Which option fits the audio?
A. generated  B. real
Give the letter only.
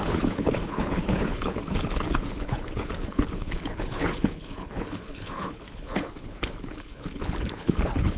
A